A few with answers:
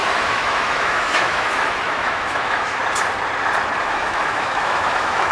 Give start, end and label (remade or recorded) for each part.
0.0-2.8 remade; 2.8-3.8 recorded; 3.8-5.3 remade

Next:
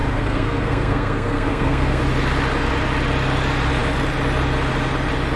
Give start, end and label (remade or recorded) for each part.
0.0-2.0 remade; 2.0-5.4 recorded

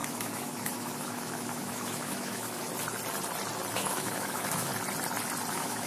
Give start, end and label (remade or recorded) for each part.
0.0-2.7 remade; 2.7-3.7 recorded; 3.7-4.7 remade; 4.7-5.5 recorded; 5.5-5.9 remade

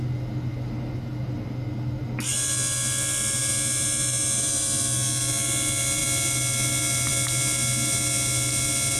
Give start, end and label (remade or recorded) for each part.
0.0-9.0 recorded

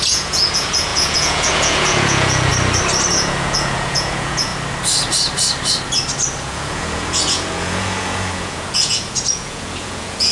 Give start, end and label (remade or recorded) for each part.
0.0-2.5 remade; 2.5-3.1 recorded; 3.1-4.5 remade; 4.5-6.4 recorded; 6.4-10.3 remade

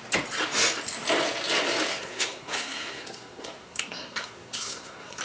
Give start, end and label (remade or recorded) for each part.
0.0-1.9 recorded; 1.9-5.2 remade

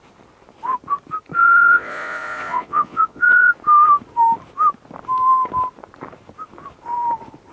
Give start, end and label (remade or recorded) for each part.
0.0-1.4 recorded; 1.4-3.5 remade; 3.5-7.5 recorded